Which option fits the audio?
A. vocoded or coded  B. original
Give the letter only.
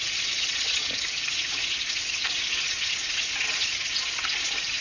A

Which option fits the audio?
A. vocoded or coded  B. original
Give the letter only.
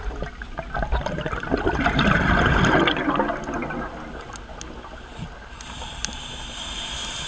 B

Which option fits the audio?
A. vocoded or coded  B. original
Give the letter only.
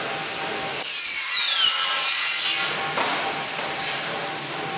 B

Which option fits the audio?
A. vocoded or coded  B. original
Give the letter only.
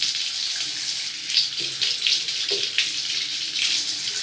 B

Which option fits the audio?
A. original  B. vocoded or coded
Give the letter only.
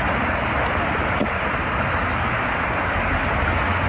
A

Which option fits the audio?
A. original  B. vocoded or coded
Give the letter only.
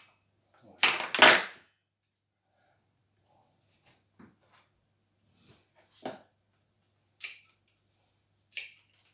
A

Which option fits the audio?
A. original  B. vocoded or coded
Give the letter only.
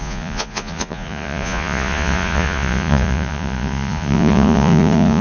B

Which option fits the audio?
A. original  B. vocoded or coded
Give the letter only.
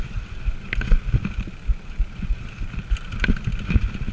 A